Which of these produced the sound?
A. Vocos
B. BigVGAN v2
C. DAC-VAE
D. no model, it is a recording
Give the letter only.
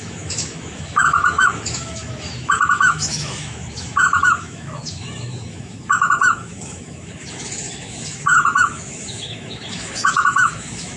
C